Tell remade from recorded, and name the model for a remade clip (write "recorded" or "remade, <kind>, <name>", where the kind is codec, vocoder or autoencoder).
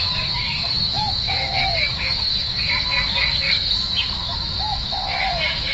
remade, codec, DAC